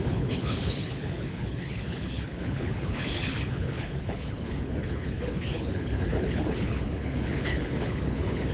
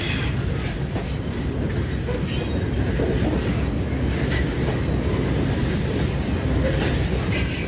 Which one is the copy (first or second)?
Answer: first